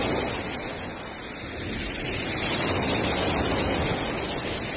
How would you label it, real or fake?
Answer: real